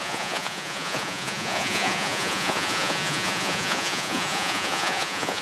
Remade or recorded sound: remade